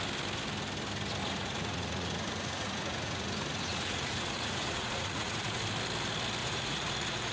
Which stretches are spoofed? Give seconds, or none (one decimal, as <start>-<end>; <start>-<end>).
1.2-5.6; 6.4-7.3